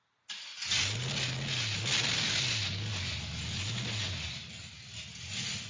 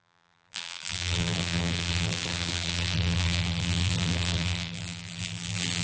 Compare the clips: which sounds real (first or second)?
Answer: first